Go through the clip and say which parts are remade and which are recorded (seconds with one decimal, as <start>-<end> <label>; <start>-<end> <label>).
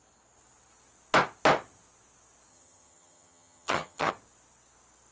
0.0-2.5 recorded; 2.5-4.1 remade; 4.1-5.1 recorded